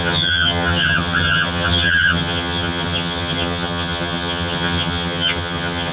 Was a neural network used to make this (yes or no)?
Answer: yes